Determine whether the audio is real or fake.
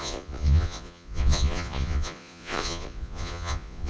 fake